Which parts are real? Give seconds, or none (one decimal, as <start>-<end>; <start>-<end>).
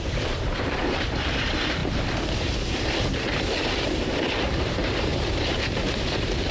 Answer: 1.8-2.4